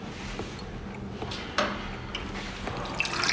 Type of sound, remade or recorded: recorded